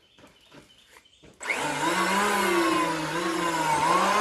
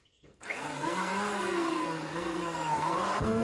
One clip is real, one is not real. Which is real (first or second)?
first